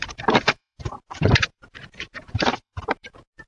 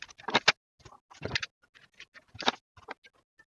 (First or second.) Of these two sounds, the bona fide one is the second